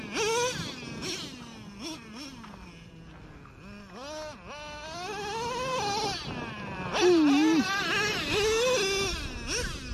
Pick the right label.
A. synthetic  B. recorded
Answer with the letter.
B